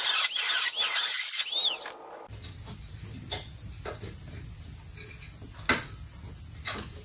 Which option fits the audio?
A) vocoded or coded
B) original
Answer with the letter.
B